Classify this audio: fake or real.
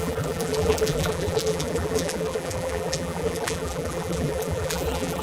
fake